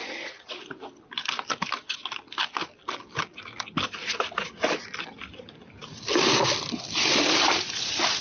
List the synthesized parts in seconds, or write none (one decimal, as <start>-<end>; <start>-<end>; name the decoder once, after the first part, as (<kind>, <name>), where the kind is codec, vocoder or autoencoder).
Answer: 0.0-0.7 (vocoder, Vocos)